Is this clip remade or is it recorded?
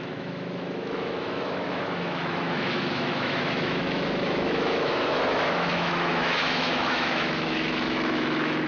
remade